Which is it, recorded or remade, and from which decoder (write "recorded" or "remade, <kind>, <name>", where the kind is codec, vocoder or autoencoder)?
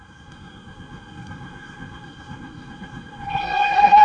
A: remade, codec, SNAC